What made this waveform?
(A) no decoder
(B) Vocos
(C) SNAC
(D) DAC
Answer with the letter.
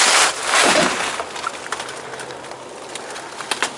A